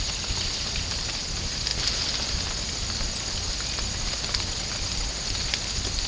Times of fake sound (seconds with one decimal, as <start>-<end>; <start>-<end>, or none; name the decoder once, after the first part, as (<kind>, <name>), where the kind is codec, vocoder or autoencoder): none